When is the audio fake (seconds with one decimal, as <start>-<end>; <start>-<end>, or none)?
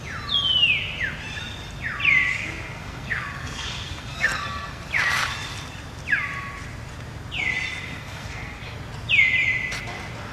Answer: 2.3-4.8; 7.8-8.6